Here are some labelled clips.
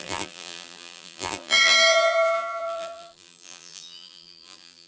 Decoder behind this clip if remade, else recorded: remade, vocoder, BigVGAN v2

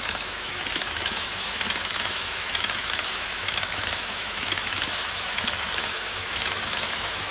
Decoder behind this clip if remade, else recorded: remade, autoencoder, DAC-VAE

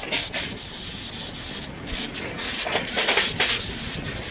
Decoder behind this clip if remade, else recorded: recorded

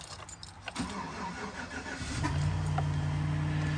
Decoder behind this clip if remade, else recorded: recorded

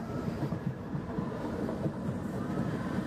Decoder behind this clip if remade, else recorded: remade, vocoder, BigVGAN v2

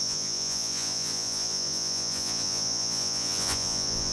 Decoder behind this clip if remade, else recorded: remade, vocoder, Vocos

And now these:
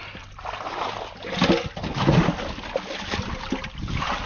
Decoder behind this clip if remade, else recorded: recorded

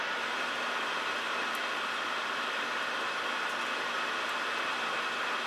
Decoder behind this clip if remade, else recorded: recorded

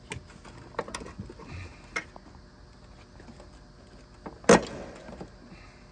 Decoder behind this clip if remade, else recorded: recorded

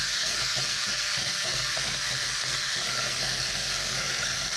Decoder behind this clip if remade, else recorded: remade, codec, SNAC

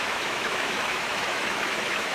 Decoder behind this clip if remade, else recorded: remade, autoencoder, DAC-VAE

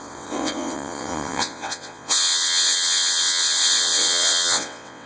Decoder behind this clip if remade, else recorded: remade, vocoder, WaveNeXt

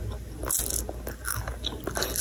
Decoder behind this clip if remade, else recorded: recorded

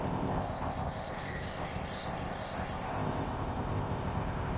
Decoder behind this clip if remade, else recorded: remade, codec, ZipCodec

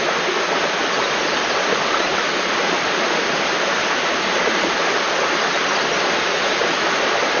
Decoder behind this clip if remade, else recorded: recorded